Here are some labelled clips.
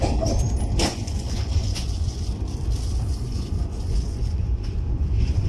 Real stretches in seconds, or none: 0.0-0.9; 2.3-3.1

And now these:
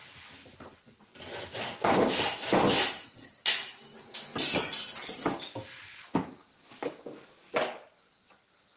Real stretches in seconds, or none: 0.0-6.4; 7.5-8.8

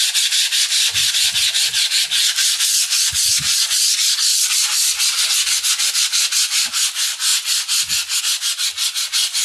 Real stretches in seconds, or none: 0.0-9.4

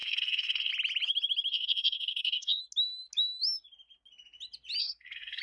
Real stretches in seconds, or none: 0.7-1.5; 2.6-4.8

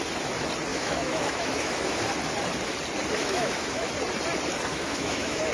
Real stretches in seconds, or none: 0.0-0.7; 2.0-3.2; 3.9-4.7

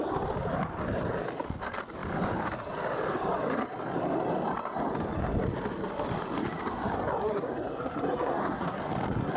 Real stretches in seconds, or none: 0.0-7.2; 8.8-9.4

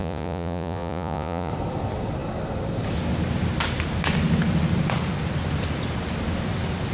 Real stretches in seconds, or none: 1.5-6.9